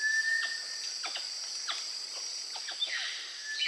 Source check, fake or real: real